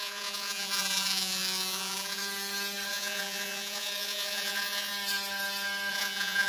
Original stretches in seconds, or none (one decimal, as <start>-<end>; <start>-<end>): 2.2-2.9; 4.9-5.9